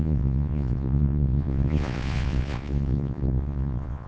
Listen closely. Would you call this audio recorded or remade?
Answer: remade